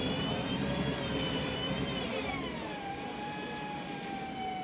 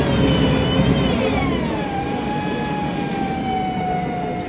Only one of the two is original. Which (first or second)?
second